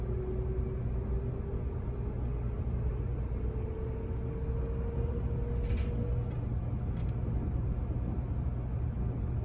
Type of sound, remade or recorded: recorded